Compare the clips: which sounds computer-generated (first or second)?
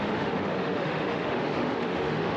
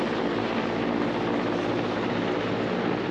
first